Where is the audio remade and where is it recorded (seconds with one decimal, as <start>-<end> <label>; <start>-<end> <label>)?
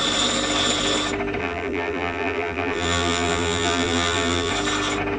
0.0-1.4 recorded; 1.4-4.5 remade; 4.5-5.2 recorded